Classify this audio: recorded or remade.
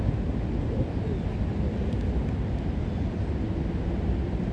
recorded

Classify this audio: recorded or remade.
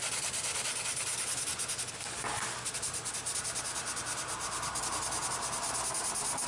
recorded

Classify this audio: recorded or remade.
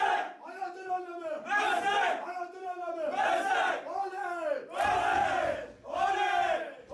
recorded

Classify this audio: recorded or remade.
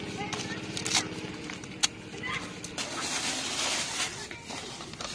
recorded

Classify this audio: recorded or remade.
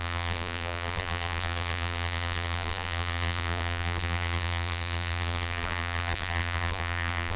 remade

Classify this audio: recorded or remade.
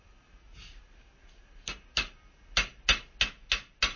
recorded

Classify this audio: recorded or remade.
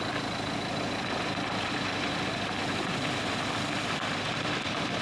remade